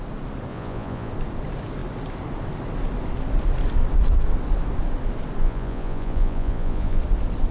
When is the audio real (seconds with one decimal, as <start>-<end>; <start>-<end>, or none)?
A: 0.0-0.5; 1.1-5.4; 7.0-7.5